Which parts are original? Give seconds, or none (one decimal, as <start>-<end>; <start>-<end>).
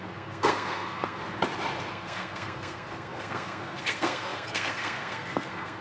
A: 1.2-1.9